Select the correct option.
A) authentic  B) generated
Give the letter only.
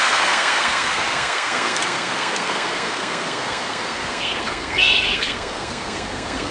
B